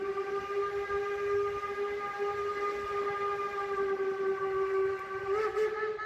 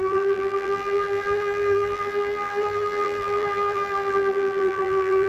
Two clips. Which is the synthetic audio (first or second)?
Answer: second